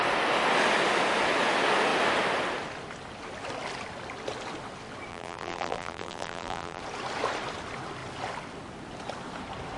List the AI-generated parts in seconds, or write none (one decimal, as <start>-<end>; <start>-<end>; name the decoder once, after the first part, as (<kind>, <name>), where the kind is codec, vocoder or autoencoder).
5.1-6.8 (vocoder, BigVGAN v2)